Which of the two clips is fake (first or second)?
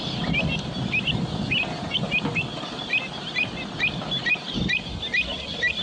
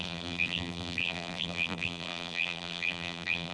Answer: second